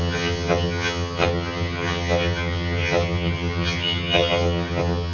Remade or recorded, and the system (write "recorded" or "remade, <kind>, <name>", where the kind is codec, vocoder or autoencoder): remade, vocoder, HiFi-GAN